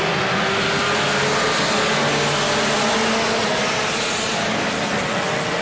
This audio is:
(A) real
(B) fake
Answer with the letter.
A